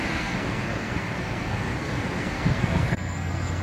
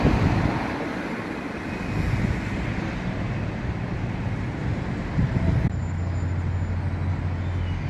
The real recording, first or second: second